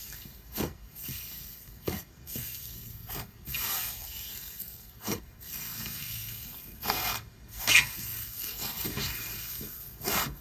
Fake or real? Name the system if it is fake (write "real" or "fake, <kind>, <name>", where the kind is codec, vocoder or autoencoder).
fake, codec, SNAC